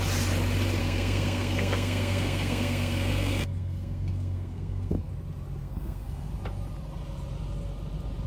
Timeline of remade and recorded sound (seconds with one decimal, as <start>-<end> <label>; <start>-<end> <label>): 0.0-0.8 recorded; 0.8-5.1 remade; 5.1-5.6 recorded; 5.6-6.3 remade; 6.3-8.3 recorded